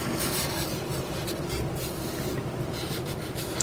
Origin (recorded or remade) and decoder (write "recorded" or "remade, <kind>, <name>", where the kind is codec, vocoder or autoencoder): recorded